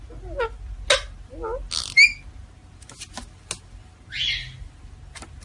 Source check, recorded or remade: recorded